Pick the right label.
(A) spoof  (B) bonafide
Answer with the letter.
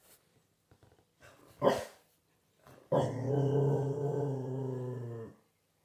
B